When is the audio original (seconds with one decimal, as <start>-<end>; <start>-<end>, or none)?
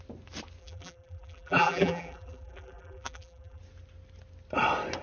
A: 0.0-0.6; 3.6-5.0